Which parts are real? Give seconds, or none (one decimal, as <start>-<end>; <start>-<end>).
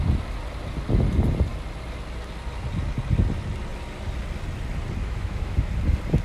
0.0-5.0; 5.7-6.2